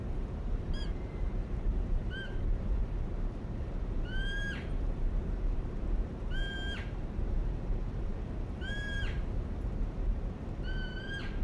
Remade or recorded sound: remade